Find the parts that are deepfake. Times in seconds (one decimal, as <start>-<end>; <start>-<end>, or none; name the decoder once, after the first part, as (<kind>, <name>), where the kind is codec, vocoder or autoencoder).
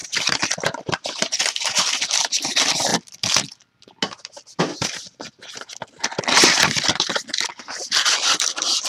0.0-1.4 (vocoder, BigVGAN v2)